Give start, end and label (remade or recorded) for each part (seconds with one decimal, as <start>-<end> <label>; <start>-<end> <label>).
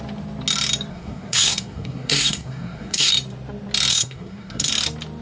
0.0-0.9 recorded; 0.9-3.1 remade; 3.1-3.9 recorded; 3.9-4.7 remade; 4.7-5.2 recorded